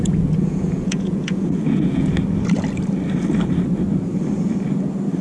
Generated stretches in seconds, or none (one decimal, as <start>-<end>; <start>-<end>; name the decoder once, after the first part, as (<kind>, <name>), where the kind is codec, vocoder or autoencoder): 0.0-2.1 (vocoder, Vocos)